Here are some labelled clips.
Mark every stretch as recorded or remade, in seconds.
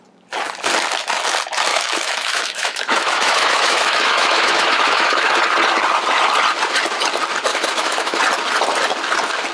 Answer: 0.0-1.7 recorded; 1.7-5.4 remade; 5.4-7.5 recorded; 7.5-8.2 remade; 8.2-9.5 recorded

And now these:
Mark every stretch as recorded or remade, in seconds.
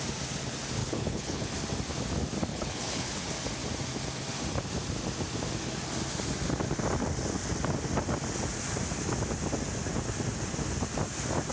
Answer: 0.0-0.8 recorded; 0.8-1.5 remade; 1.5-2.5 recorded; 2.5-3.2 remade; 3.2-11.5 recorded